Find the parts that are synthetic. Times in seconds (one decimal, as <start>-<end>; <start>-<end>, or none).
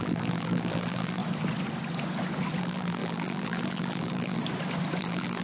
0.0-1.2; 2.6-4.4; 5.0-5.4